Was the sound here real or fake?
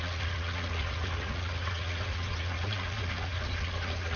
fake